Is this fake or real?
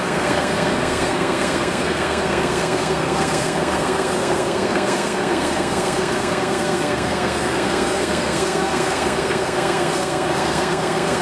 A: fake